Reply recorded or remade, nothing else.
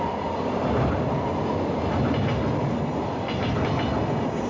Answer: recorded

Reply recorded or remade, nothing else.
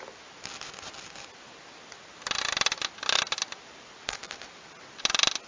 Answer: recorded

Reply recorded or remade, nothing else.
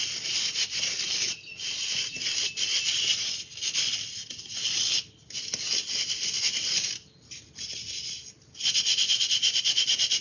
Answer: recorded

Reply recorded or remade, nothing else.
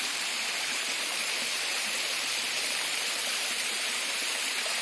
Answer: remade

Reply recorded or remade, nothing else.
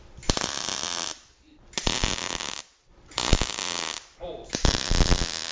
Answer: remade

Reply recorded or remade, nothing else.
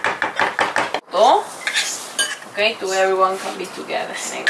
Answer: recorded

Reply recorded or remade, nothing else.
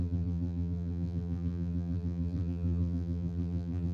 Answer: remade